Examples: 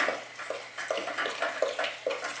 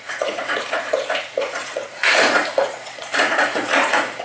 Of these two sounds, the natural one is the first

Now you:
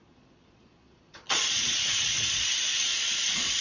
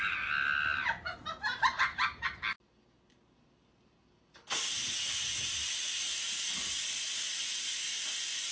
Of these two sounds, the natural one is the second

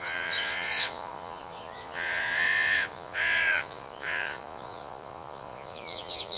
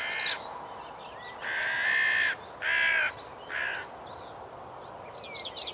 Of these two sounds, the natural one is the second